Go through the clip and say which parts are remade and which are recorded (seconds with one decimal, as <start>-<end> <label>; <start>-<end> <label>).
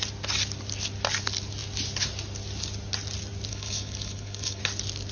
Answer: 0.0-3.5 recorded; 3.5-4.6 remade; 4.6-5.1 recorded